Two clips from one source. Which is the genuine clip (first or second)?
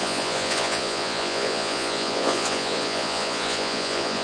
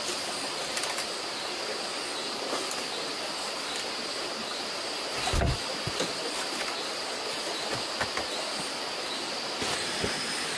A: second